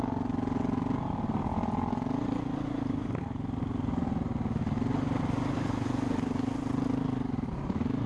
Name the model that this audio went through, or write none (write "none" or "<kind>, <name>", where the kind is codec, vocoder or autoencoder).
none